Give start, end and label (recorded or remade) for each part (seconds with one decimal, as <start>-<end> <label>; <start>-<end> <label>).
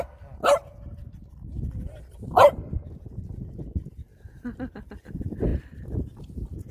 0.0-6.7 recorded